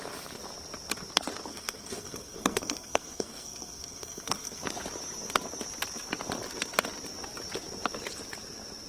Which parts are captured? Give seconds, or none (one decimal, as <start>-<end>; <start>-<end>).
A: 0.0-1.5; 4.6-8.9